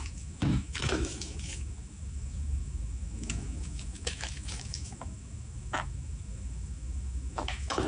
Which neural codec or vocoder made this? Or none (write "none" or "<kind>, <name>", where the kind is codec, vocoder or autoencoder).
autoencoder, DAC-VAE